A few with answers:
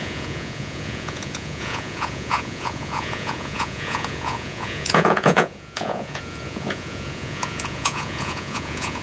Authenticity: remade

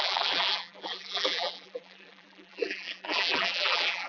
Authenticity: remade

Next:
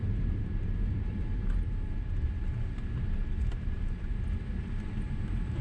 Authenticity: remade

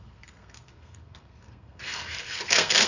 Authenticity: remade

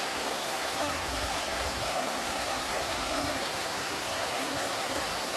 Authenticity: remade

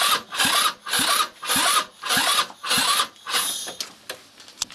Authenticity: recorded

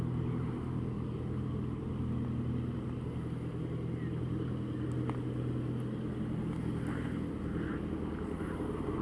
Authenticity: recorded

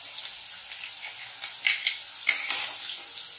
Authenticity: recorded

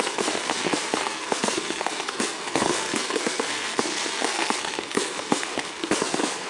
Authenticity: remade